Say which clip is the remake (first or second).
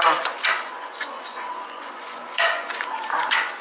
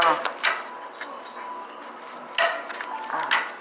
first